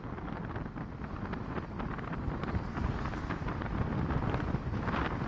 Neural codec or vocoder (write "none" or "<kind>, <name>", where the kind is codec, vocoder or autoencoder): none